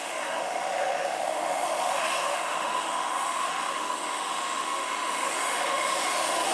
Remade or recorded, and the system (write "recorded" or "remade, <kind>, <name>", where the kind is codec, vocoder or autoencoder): remade, autoencoder, DAC-VAE